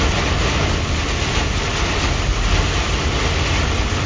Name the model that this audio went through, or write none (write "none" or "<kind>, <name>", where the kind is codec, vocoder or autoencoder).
none